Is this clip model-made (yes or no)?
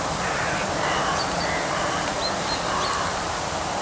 no